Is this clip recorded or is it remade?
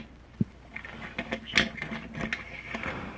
recorded